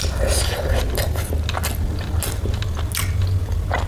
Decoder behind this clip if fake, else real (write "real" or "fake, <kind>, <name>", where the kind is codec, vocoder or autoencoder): real